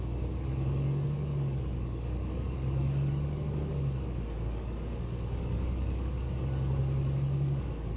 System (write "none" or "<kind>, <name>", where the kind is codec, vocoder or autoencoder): codec, DAC